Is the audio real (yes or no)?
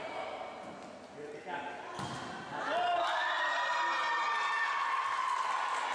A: yes